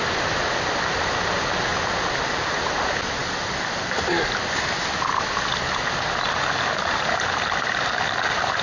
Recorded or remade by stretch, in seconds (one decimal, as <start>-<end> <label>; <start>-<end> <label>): 0.0-8.6 recorded